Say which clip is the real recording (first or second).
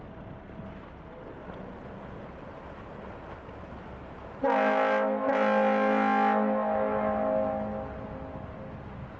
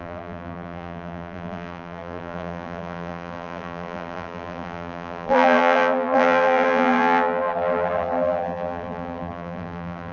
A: first